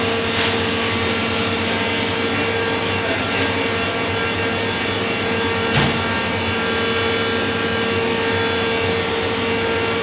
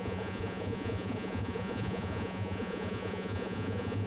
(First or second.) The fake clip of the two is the second